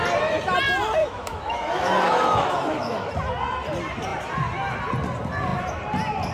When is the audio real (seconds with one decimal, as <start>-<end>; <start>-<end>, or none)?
0.0-1.0; 3.1-6.3